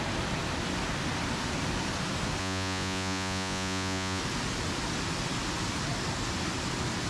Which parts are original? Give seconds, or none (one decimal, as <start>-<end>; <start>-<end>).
0.0-2.4; 4.2-7.1